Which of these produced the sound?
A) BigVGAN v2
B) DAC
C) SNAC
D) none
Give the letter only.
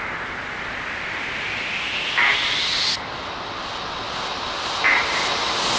D